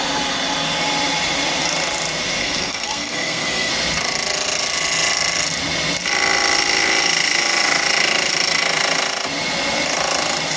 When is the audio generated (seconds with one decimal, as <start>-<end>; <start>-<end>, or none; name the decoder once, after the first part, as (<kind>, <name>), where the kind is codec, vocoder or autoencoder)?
2.4-3.7 (codec, SNAC)